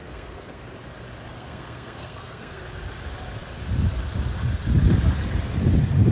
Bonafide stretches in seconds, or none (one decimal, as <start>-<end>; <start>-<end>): 0.6-1.3; 2.6-6.1